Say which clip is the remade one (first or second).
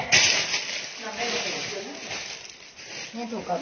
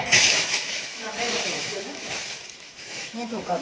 second